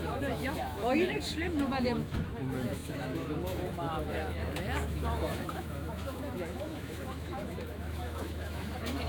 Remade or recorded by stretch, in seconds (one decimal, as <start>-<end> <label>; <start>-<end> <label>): 0.0-9.1 remade